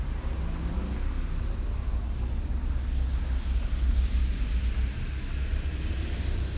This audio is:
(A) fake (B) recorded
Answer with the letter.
B